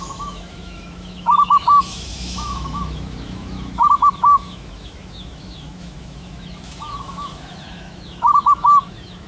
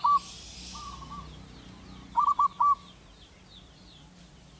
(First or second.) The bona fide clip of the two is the second